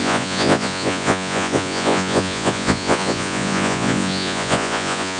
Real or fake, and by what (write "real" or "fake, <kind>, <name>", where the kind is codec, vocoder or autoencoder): fake, vocoder, Vocos